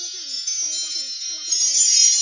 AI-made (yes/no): yes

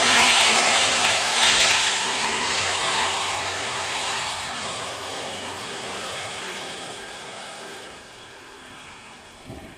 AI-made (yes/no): yes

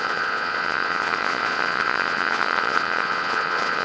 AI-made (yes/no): yes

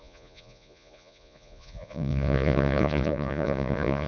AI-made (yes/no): yes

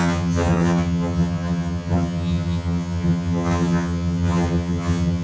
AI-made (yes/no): yes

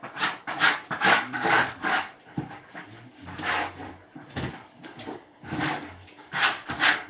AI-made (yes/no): yes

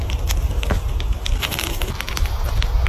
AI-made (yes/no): no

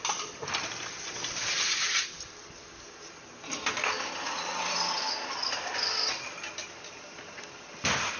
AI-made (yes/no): no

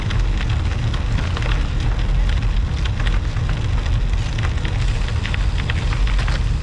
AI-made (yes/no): no